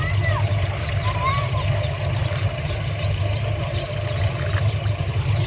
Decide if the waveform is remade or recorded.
recorded